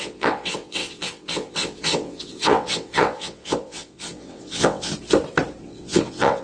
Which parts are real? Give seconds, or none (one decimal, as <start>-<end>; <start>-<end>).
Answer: 4.9-5.6